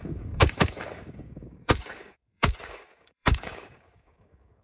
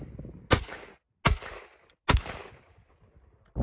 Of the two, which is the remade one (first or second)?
first